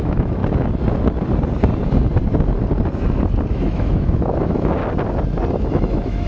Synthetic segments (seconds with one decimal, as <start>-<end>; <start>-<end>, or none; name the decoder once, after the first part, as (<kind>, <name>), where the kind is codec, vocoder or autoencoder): 0.0-0.4 (autoencoder, DAC-VAE); 3.5-4.8; 5.7-6.3